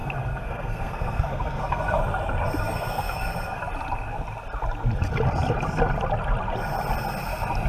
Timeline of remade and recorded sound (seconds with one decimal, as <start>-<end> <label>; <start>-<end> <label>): 0.0-2.0 remade; 2.0-2.6 recorded; 2.6-3.6 remade; 3.6-7.7 recorded